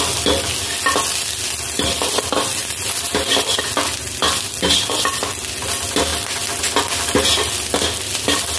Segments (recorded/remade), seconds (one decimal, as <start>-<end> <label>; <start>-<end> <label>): 0.0-8.6 recorded